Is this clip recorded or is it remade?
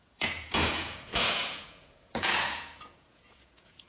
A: remade